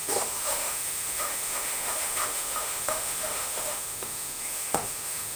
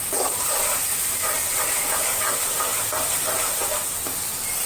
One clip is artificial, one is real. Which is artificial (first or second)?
first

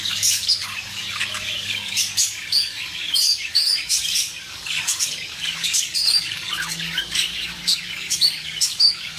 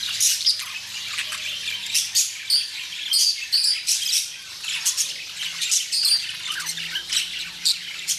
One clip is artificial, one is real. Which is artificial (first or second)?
first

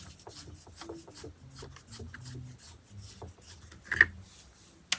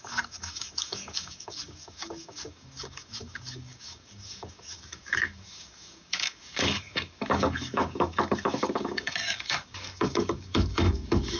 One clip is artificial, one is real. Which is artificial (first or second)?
second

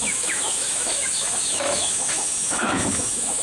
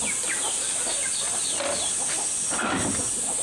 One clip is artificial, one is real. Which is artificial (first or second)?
first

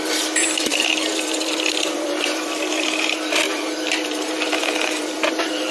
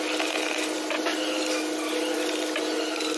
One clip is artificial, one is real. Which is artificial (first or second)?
first